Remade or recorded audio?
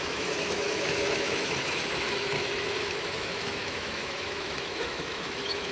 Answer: remade